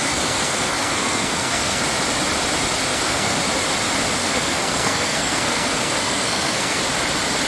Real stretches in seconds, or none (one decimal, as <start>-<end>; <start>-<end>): 1.8-2.9; 3.4-4.2; 6.8-7.5